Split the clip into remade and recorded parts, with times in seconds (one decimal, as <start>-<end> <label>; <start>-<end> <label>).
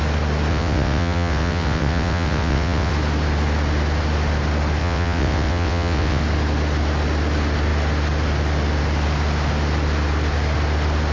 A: 0.0-0.5 recorded; 0.5-2.9 remade; 2.9-4.8 recorded; 4.8-6.2 remade; 6.2-11.1 recorded